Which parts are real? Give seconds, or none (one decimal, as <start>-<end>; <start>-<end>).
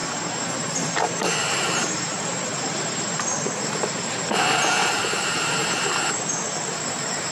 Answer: 3.2-5.0; 6.4-7.3